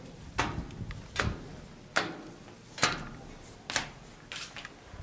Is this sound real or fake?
real